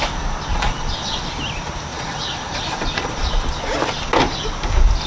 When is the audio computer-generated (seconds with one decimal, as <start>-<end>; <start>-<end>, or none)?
0.5-1.2; 1.9-3.5